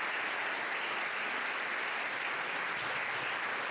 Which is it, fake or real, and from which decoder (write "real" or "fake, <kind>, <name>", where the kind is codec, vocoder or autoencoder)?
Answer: real